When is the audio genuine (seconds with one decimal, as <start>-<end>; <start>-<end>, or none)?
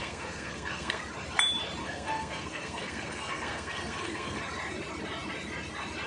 1.0-1.8; 4.4-6.1